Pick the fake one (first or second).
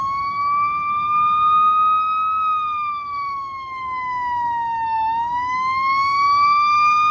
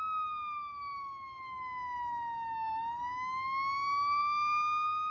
first